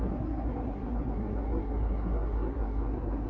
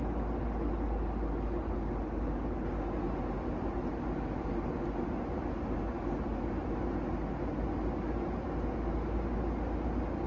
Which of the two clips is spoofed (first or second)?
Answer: first